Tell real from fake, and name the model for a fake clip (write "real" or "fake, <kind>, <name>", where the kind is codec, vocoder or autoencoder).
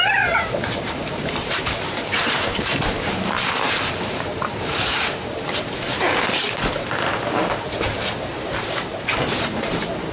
fake, vocoder, BigVGAN v2